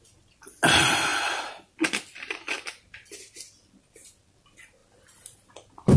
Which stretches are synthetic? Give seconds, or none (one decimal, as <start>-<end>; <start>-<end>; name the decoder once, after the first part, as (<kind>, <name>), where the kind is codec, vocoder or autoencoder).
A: none